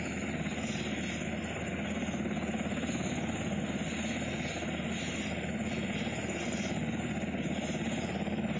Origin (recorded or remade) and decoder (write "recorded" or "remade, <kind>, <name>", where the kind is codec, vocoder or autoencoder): recorded